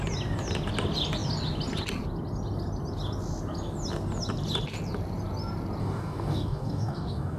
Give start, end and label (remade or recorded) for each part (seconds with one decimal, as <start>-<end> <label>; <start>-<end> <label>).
0.0-5.8 recorded; 5.8-7.4 remade